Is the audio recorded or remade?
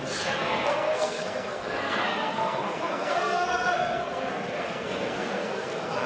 remade